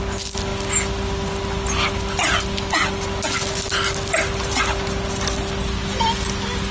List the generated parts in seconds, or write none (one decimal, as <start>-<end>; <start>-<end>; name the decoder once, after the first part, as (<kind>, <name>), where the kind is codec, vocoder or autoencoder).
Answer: none